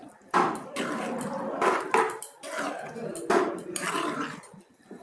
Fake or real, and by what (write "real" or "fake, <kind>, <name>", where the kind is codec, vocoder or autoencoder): real